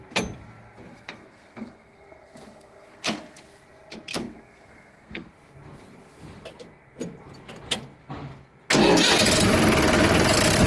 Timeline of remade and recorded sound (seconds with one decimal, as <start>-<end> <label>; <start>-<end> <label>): 0.0-0.9 recorded; 0.9-3.4 remade; 3.4-4.1 recorded; 4.1-5.3 remade; 5.3-10.7 recorded